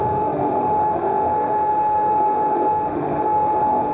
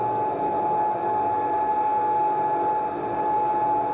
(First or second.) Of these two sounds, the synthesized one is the first